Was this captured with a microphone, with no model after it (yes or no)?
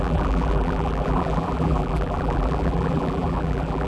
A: no